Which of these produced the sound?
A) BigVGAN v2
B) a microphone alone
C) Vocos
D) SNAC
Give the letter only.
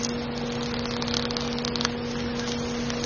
B